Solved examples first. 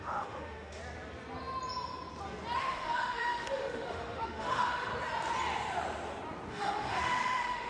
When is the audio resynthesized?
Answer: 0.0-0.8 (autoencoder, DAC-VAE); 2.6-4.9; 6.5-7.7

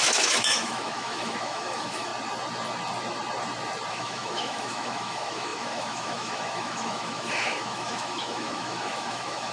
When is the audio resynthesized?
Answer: 0.0-2.1 (autoencoder, DAC-VAE); 3.9-9.5

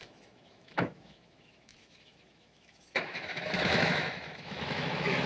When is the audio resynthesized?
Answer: 0.0-5.3 (autoencoder, DAC-VAE)

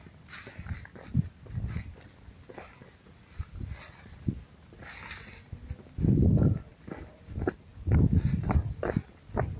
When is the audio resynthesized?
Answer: none

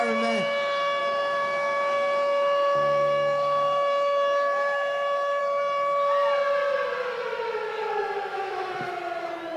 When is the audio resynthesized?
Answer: 1.0-5.4 (autoencoder, DAC-VAE); 8.3-8.9

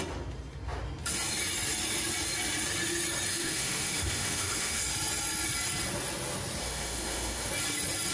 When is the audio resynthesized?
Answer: 3.3-4.8 (autoencoder, DAC-VAE); 6.6-7.5